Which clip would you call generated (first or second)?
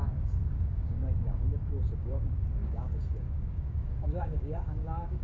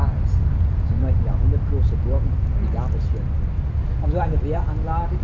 first